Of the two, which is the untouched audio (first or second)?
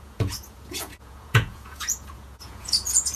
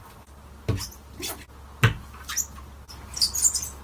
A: second